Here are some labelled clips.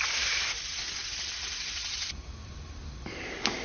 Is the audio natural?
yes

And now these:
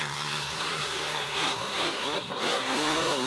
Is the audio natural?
no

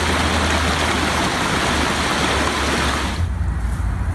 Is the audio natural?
yes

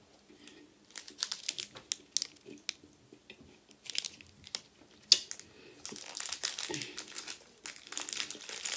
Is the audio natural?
yes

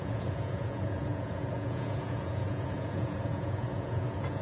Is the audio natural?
no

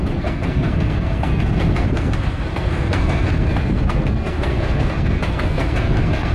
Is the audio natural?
no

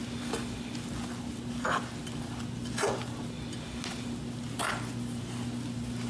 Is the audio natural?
yes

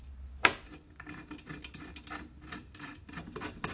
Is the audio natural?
yes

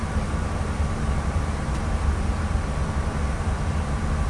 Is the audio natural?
no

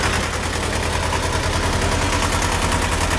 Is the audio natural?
yes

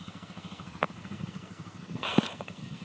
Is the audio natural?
no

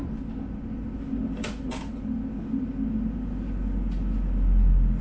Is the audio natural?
yes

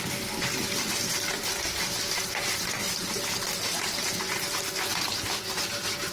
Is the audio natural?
yes